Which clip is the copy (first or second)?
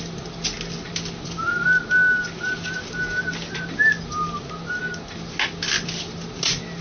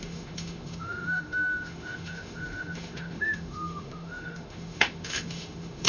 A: second